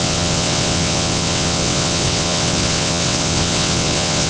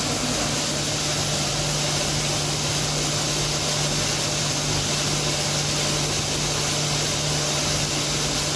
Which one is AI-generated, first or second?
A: first